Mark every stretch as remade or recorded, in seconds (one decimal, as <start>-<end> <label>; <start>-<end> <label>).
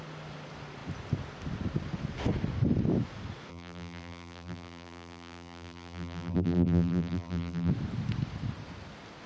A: 0.0-3.5 recorded; 3.5-7.7 remade; 7.7-9.3 recorded